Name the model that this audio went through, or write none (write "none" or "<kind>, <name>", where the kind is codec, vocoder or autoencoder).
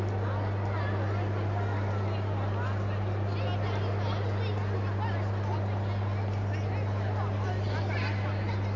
none